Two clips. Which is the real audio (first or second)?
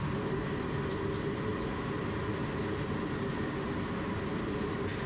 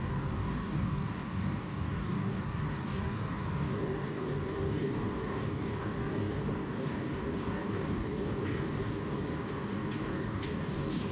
first